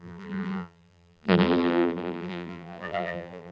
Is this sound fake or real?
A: fake